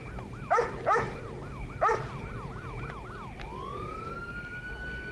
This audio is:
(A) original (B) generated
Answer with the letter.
A